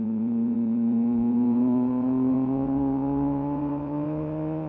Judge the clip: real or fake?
fake